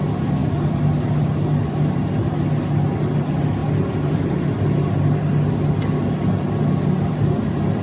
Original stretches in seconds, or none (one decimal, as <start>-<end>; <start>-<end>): 0.0-7.8